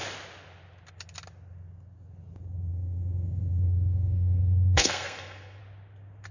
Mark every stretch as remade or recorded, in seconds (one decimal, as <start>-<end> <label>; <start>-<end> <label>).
0.0-2.7 recorded; 2.7-5.6 remade; 5.6-6.3 recorded